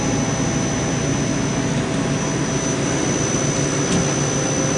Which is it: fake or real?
real